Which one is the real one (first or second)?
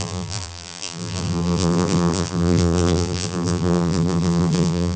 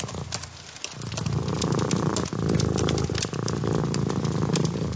second